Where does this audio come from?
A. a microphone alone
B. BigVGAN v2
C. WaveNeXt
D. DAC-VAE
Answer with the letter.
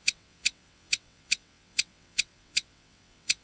C